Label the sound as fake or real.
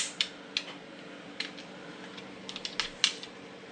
real